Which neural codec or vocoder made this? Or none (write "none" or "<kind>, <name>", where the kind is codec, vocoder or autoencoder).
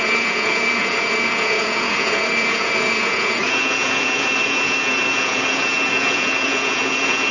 vocoder, Vocos